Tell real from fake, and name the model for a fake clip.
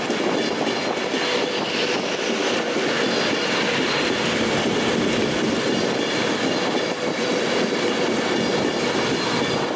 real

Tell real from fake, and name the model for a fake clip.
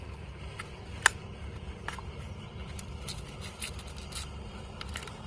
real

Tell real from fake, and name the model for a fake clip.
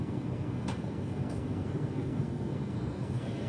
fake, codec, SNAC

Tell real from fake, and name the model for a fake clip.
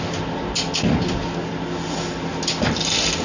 real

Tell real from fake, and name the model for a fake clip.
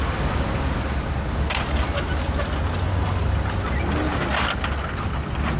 real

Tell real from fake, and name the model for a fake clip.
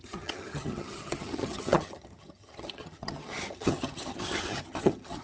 fake, vocoder, HiFi-GAN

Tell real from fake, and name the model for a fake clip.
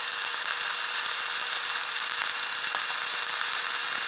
real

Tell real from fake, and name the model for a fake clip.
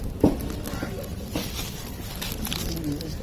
real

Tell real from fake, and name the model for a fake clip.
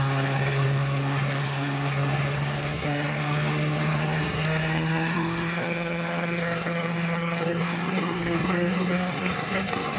fake, codec, SNAC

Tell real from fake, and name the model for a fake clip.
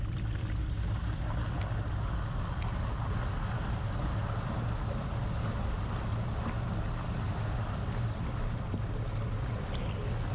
real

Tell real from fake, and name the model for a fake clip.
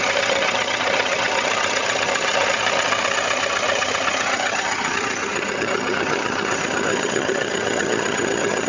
fake, vocoder, HiFi-GAN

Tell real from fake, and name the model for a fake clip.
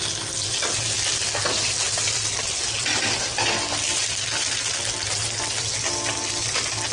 real